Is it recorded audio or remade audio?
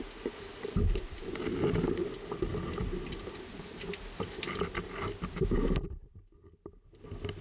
recorded